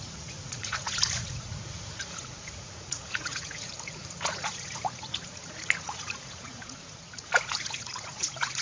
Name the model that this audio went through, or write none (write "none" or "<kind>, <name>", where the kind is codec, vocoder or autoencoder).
vocoder, Vocos